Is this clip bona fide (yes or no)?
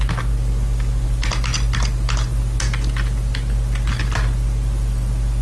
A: yes